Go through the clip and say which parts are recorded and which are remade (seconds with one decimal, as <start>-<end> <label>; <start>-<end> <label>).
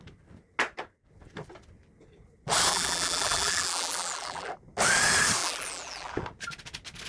0.0-2.7 recorded; 2.7-4.5 remade; 4.5-5.4 recorded; 5.4-6.1 remade; 6.1-7.1 recorded